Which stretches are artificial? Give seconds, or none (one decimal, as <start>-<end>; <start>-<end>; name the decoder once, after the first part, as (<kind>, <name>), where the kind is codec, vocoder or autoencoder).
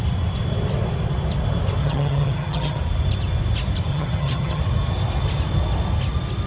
1.8-2.8 (vocoder, HiFi-GAN); 3.9-4.6